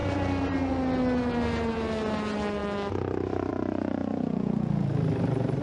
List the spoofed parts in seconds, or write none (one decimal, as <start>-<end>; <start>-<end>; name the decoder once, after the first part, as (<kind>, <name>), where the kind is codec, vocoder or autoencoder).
4.0-4.7 (vocoder, Vocos)